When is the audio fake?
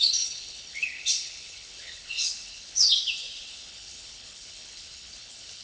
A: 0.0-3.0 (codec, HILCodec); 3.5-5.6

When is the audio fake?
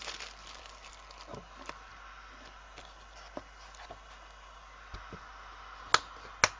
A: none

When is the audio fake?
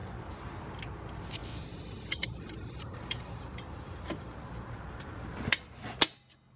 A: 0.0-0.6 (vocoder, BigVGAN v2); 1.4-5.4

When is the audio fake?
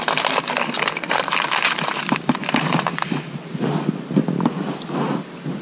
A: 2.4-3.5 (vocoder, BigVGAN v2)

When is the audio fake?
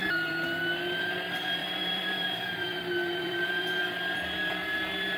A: 1.6-3.5 (vocoder, BigVGAN v2)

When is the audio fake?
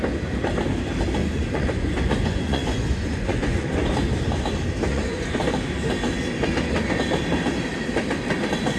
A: 1.2-3.9 (vocoder, Vocos); 4.9-5.4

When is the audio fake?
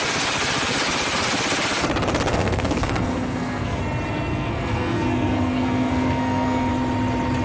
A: 2.3-3.8 (codec, SNAC); 4.3-6.7